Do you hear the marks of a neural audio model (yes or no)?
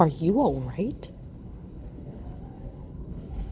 yes